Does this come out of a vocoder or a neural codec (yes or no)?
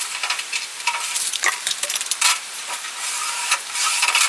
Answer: yes